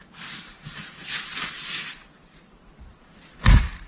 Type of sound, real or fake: real